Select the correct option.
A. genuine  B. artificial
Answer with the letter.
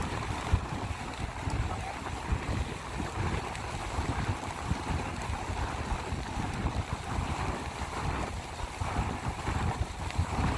A